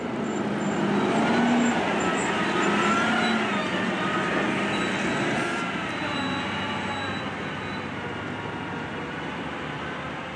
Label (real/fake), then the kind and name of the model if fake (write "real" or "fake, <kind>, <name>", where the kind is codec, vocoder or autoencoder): real